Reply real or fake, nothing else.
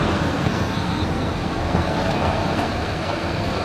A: fake